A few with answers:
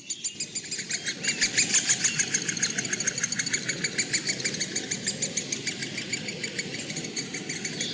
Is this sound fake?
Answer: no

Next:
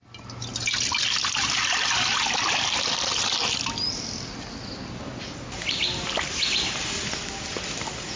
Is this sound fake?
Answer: no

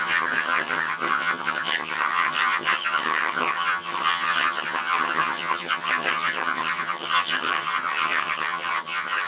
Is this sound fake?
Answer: yes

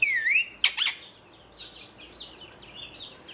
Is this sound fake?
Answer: no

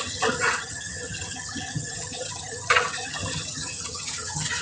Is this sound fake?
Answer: yes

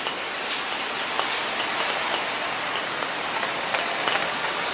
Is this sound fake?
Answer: no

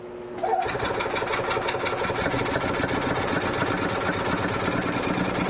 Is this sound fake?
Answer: no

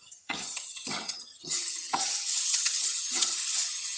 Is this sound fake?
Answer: yes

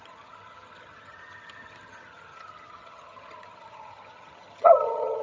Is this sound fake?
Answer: yes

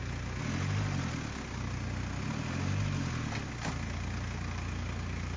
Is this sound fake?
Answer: no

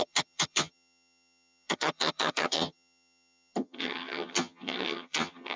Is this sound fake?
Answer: yes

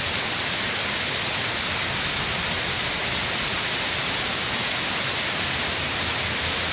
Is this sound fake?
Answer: no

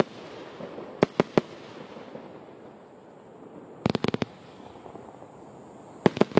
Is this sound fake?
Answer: no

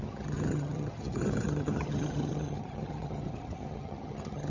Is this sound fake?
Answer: yes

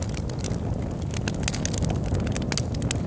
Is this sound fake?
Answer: no